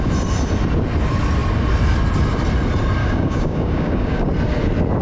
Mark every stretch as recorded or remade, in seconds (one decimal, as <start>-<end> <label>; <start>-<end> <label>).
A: 0.0-3.0 recorded; 3.0-4.3 remade; 4.3-5.0 recorded